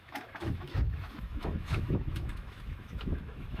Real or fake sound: fake